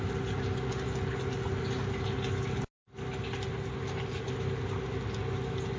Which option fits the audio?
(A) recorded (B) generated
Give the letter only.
A